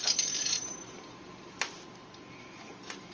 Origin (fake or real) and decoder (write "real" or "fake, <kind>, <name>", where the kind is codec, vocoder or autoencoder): real